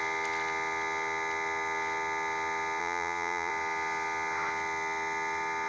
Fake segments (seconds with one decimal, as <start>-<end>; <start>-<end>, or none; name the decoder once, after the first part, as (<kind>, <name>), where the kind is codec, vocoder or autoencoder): 2.8-3.5 (vocoder, Vocos)